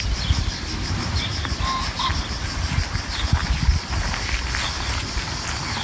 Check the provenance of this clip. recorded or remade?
recorded